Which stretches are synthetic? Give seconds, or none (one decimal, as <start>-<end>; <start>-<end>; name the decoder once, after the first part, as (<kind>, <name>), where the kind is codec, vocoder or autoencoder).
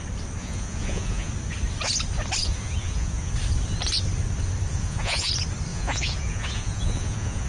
0.4-1.3 (vocoder, Vocos); 2.4-3.3; 4.7-5.3; 5.7-7.5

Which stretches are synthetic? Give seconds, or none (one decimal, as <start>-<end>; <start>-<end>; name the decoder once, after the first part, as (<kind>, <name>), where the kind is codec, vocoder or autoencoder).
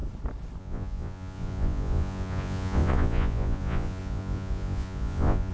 0.6-5.5 (vocoder, Vocos)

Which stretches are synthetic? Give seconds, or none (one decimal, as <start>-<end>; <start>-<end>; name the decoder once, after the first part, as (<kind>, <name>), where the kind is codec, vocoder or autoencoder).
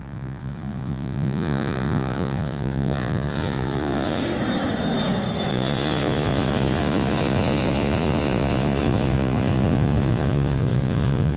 0.0-4.2 (vocoder, Vocos); 5.5-11.4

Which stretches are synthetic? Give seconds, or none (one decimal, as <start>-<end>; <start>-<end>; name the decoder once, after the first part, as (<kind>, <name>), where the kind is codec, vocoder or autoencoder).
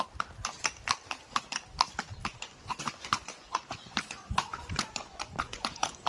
2.3-6.1 (vocoder, Vocos)